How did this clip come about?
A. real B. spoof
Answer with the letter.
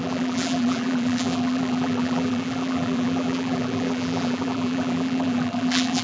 B